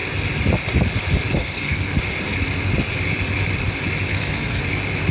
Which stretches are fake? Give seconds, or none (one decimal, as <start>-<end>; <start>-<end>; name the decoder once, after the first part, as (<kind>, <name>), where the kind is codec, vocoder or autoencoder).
1.4-1.9 (codec, SNAC); 4.1-4.6